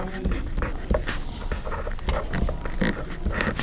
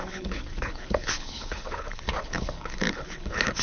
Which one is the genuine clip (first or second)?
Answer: first